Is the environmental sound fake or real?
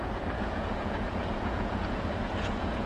fake